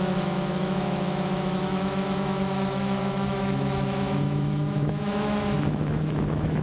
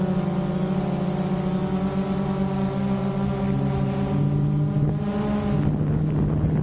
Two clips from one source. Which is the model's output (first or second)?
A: first